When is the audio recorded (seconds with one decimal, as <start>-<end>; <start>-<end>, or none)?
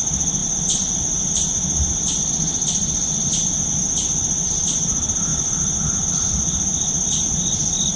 0.0-8.0